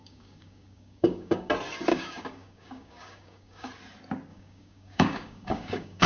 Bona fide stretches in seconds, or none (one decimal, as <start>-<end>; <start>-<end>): 1.5-1.9; 3.7-4.3